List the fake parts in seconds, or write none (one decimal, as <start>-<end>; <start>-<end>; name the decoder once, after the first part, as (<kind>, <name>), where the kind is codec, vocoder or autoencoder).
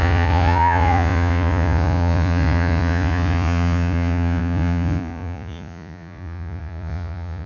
0.0-7.5 (vocoder, Vocos)